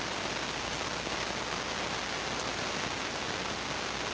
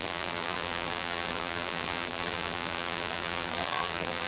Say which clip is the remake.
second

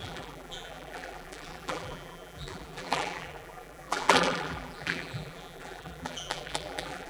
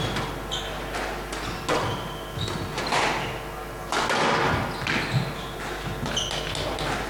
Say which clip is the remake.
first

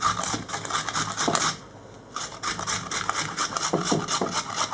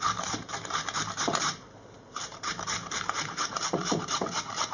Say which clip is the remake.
second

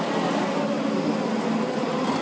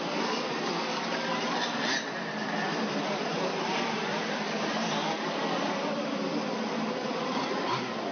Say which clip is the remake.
second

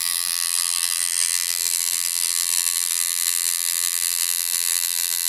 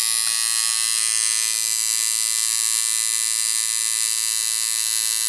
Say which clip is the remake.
first